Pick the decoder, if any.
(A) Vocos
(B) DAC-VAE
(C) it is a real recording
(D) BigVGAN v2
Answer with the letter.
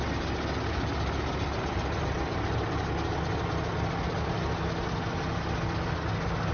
C